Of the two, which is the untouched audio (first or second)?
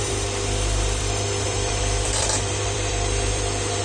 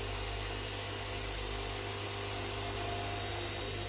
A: second